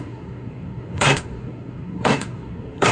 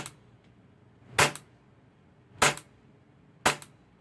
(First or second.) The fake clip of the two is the first